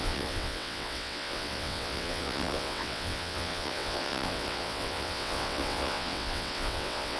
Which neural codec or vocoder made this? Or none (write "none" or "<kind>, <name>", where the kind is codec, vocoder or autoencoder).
vocoder, WaveNeXt